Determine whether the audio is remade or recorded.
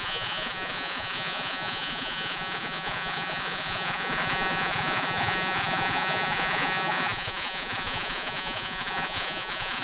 remade